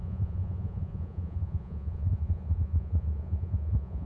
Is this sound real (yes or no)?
no